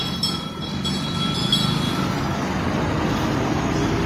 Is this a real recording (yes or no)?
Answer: yes